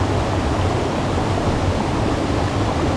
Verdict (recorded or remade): recorded